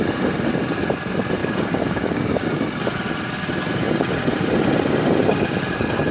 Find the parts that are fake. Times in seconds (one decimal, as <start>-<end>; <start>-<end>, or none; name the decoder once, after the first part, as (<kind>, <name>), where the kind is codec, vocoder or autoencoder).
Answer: 1.4-2.6 (codec, DAC)